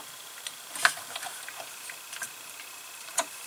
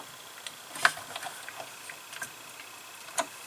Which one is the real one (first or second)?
second